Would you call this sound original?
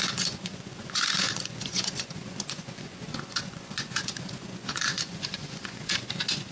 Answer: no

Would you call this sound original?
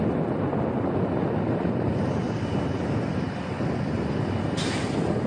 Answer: yes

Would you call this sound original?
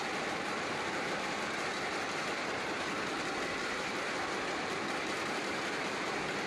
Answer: yes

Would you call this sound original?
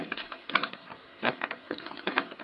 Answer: no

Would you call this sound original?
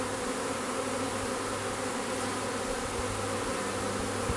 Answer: yes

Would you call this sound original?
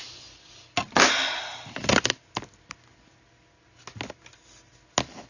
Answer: yes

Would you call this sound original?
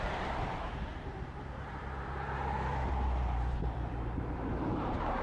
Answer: no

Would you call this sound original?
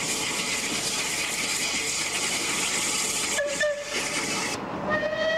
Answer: yes